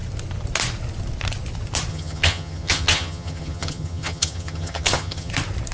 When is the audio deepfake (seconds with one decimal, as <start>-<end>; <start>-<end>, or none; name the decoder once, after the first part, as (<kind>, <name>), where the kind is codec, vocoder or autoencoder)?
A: 1.9-5.3 (vocoder, HiFi-GAN)